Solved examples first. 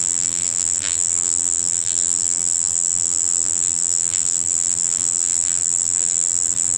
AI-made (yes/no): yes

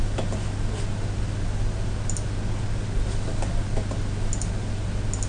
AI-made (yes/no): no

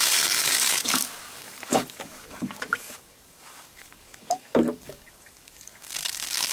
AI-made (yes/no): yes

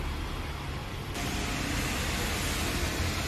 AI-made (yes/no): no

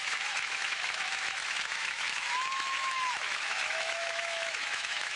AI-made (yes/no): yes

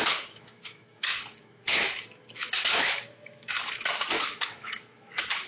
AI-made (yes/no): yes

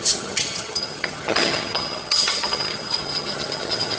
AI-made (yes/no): yes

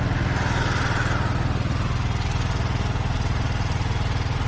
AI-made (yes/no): no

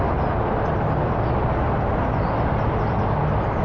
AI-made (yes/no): no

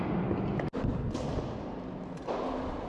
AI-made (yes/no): no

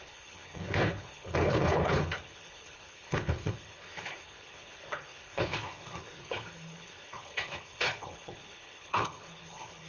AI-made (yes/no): yes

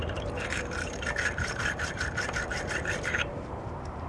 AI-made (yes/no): yes